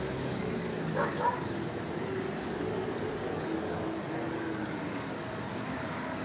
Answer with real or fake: fake